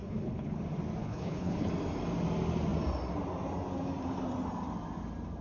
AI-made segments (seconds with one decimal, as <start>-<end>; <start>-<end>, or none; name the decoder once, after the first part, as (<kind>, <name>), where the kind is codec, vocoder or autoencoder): 0.0-0.6 (codec, HILCodec); 1.0-1.7